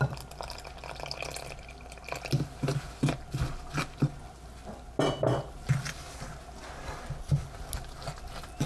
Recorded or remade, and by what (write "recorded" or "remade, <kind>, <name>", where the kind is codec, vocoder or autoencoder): recorded